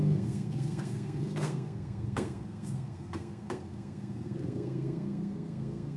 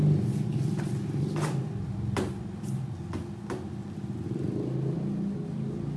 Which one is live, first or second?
second